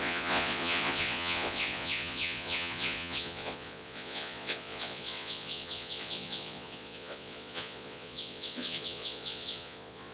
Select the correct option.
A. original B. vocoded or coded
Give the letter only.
B